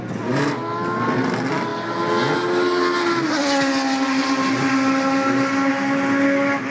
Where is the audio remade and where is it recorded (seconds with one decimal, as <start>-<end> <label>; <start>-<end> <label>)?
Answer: 0.0-6.7 recorded